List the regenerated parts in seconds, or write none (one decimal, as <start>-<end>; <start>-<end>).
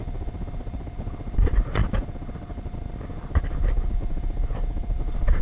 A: none